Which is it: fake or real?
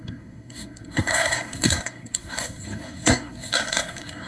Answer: fake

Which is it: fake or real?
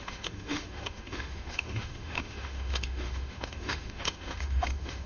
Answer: fake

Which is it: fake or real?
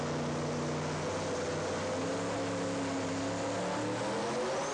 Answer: real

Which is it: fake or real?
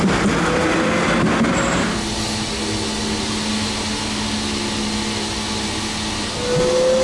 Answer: real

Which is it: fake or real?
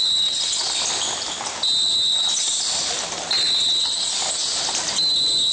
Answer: real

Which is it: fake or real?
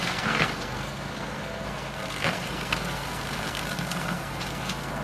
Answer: fake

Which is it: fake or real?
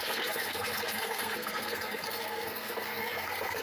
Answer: fake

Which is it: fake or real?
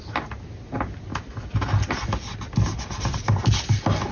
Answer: real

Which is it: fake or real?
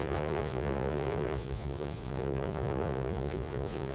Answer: fake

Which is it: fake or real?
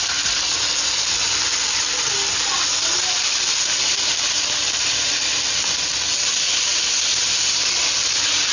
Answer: real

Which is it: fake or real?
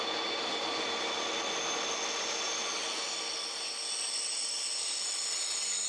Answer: real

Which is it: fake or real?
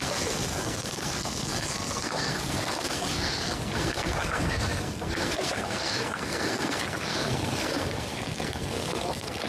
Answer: fake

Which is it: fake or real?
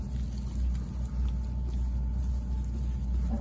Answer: real